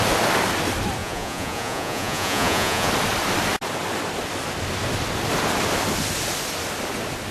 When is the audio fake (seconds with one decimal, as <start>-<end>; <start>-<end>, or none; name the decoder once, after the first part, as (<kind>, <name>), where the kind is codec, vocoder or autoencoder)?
1.0-2.9 (vocoder, Vocos)